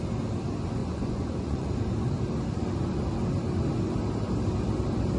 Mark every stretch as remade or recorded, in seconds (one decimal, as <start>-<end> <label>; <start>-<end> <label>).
0.0-0.8 recorded; 0.8-1.7 remade; 1.7-5.2 recorded